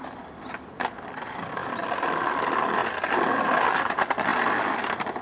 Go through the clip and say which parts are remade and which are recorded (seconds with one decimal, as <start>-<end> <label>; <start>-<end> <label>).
0.0-5.2 recorded

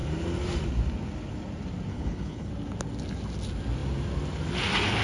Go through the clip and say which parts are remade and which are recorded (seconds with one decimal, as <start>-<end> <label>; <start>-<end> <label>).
0.0-1.9 recorded; 1.9-2.5 remade; 2.5-5.0 recorded

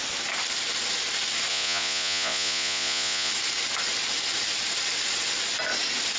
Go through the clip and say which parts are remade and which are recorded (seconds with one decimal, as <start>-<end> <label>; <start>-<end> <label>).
0.0-1.5 recorded; 1.5-3.3 remade; 3.3-6.2 recorded

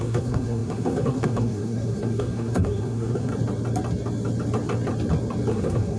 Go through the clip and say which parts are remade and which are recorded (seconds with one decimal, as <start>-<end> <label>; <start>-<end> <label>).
0.0-3.3 remade; 3.3-5.5 recorded; 5.5-6.0 remade